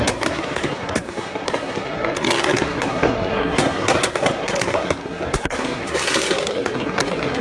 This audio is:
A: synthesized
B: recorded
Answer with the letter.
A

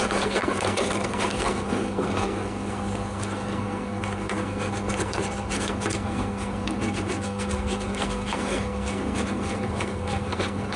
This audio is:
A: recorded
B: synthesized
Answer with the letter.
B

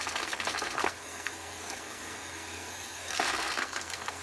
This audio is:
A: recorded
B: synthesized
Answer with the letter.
B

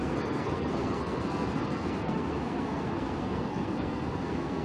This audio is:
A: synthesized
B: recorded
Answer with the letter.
A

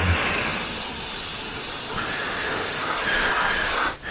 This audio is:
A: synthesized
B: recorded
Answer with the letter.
B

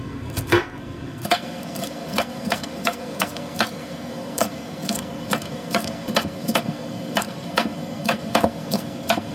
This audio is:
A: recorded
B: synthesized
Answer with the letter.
B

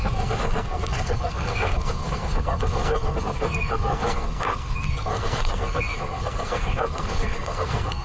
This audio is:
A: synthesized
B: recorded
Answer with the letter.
A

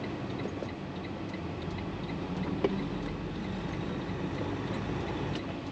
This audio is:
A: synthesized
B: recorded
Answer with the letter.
B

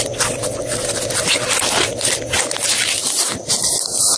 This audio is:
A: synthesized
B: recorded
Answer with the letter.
B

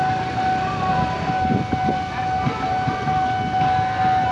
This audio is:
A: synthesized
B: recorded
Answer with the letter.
B